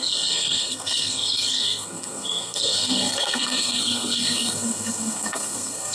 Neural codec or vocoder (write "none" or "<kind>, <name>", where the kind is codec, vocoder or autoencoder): codec, SNAC